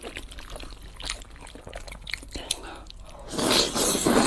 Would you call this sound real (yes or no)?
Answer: yes